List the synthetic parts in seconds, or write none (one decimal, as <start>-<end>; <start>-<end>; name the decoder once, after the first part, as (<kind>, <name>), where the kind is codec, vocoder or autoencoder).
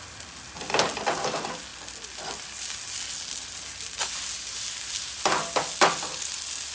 none